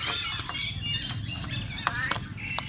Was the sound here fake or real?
real